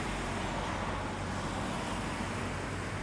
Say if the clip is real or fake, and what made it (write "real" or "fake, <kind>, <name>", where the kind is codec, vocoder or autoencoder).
real